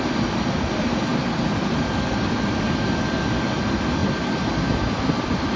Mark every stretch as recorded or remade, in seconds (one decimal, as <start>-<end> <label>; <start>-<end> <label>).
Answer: 0.0-5.6 recorded